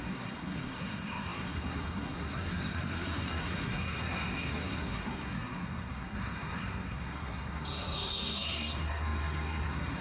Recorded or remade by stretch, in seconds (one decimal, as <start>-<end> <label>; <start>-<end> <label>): 0.0-10.0 remade